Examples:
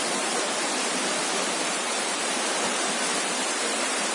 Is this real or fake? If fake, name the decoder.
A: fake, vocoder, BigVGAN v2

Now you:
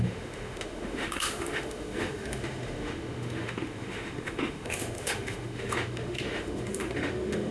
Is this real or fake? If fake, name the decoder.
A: fake, autoencoder, DAC-VAE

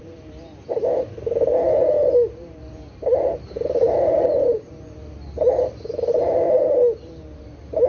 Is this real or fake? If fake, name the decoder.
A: fake, vocoder, BigVGAN v2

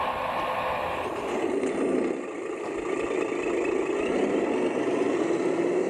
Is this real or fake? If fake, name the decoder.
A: real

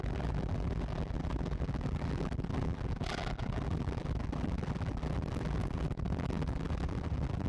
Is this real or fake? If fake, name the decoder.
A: fake, vocoder, BigVGAN v2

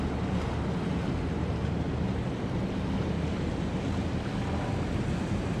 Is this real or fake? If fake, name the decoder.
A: real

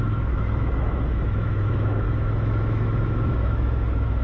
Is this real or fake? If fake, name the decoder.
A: fake, autoencoder, DAC-VAE